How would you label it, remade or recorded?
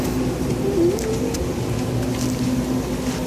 recorded